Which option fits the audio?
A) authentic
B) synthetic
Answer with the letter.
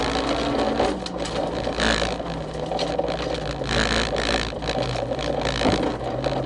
A